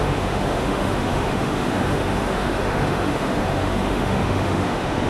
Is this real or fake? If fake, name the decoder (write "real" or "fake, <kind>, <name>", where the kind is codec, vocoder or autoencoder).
fake, autoencoder, DAC-VAE